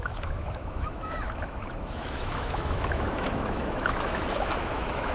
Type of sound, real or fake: fake